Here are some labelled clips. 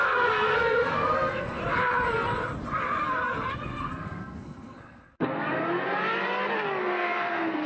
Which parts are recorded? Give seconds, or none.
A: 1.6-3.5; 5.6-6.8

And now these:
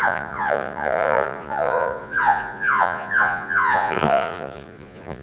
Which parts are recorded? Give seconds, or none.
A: none

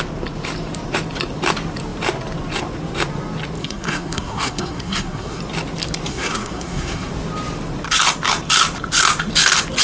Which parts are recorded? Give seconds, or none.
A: 0.0-3.6; 5.4-6.1; 7.1-9.8

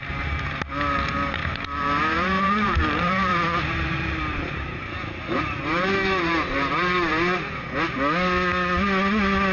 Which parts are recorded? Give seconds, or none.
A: 0.0-1.4; 6.3-9.5

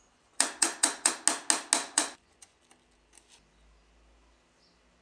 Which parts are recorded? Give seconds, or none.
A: 1.1-1.8; 2.6-5.0

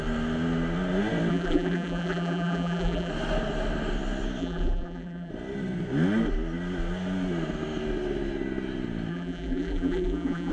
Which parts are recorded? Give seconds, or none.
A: 0.0-1.3; 3.1-4.4; 5.3-9.1